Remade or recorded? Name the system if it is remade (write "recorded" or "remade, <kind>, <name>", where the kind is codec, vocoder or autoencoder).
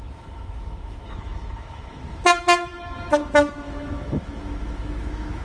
remade, autoencoder, DAC-VAE